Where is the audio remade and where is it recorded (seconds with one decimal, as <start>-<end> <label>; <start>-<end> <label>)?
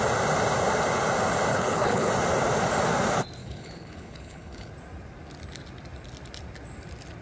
0.0-1.5 recorded; 1.5-2.1 remade; 2.1-3.4 recorded; 3.4-4.7 remade; 4.7-7.2 recorded